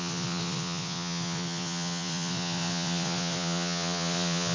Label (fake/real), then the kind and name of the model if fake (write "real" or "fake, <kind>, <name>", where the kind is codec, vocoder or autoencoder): fake, vocoder, Vocos